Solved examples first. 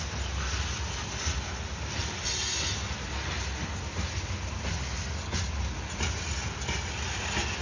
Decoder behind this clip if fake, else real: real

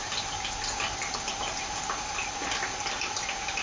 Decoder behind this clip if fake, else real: real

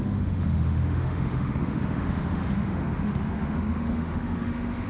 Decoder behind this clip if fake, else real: fake, autoencoder, DAC-VAE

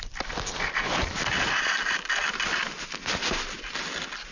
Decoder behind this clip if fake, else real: real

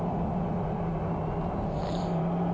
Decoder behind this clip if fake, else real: fake, vocoder, BigVGAN v2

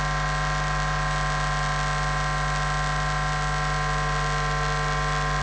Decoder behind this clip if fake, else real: real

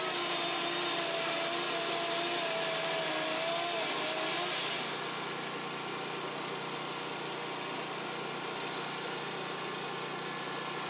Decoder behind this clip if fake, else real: real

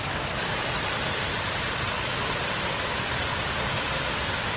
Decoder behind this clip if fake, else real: fake, vocoder, BigVGAN v2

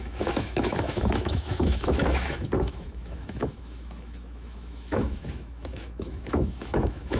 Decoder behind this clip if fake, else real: fake, autoencoder, DAC-VAE